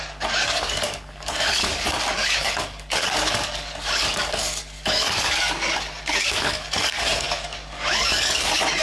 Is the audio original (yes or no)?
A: no